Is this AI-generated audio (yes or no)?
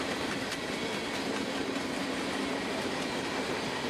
no